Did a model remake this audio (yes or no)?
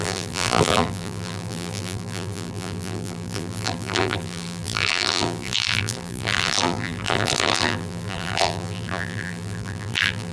yes